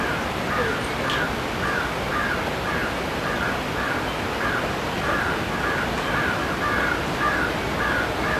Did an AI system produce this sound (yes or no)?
no